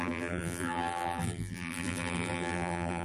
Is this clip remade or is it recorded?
remade